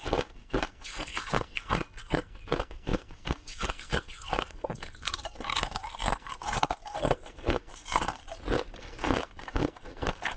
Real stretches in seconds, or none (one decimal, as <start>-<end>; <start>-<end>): 8.2-8.8